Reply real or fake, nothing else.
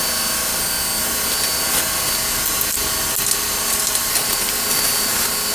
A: real